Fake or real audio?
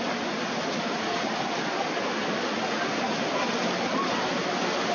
real